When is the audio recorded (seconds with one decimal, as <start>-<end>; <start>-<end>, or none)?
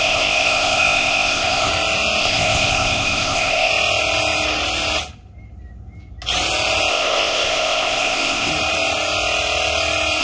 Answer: 1.7-2.2; 3.7-6.9; 8.5-10.2